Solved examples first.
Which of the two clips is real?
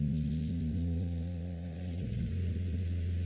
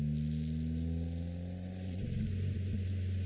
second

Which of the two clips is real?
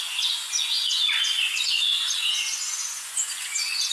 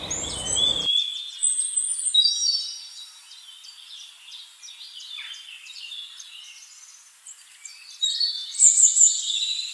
second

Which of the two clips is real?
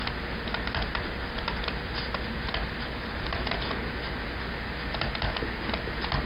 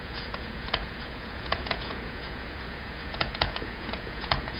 first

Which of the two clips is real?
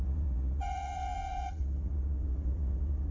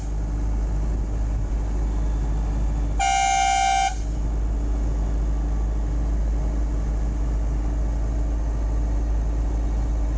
second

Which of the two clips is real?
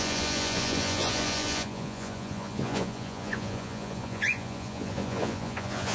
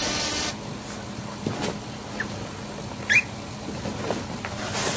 second